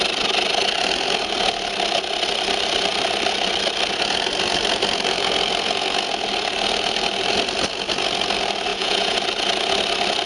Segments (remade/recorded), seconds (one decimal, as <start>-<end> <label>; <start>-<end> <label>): 0.0-8.7 recorded; 8.7-9.2 remade; 9.2-10.3 recorded